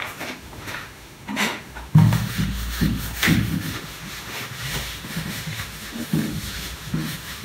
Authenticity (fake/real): fake